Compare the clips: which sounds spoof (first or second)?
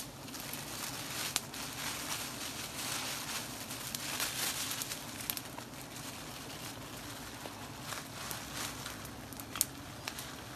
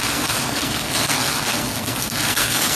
second